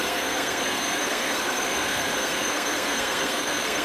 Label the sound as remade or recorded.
remade